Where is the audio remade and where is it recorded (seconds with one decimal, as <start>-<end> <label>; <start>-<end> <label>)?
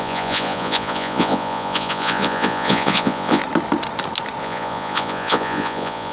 0.0-3.4 remade; 3.4-4.4 recorded; 4.4-6.1 remade